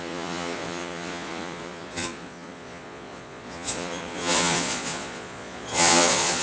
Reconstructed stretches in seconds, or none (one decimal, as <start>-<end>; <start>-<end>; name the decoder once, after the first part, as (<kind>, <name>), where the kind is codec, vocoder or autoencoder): 0.0-6.4 (vocoder, Vocos)